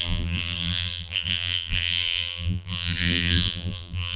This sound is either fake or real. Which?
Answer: fake